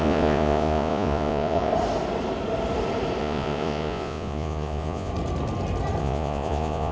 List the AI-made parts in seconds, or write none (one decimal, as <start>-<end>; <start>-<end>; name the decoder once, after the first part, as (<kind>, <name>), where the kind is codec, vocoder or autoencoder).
0.0-1.7 (vocoder, Vocos); 3.2-5.1; 6.0-6.9